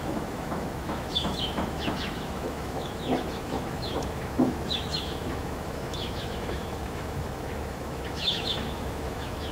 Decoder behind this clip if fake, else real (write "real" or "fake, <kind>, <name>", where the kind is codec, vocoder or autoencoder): fake, autoencoder, DAC-VAE